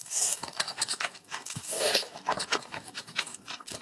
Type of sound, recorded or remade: remade